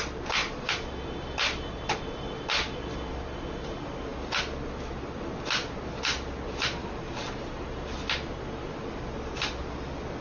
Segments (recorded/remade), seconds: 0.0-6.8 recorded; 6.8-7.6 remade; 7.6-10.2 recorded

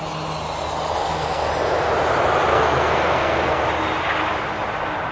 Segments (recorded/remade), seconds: 0.0-1.0 recorded; 1.0-1.5 remade; 1.5-2.5 recorded; 2.5-3.6 remade; 3.6-5.1 recorded

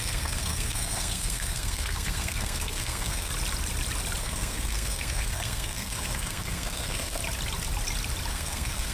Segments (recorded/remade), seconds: 0.0-3.3 remade; 3.3-4.2 recorded; 4.2-7.2 remade; 7.2-8.3 recorded; 8.3-8.9 remade